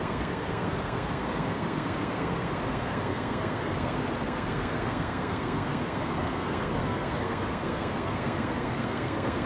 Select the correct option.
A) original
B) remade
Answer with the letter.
B